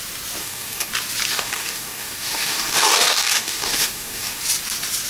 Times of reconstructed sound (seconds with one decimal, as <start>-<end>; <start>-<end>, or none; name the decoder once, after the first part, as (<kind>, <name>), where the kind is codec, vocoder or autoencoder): 0.4-0.9 (codec, DAC); 1.3-4.4